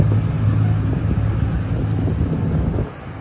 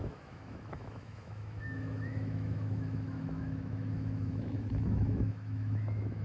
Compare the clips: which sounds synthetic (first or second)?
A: second